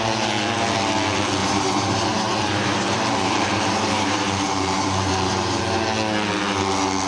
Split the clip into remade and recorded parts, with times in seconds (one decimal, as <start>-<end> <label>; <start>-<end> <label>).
0.0-1.4 recorded; 1.4-5.6 remade; 5.6-7.1 recorded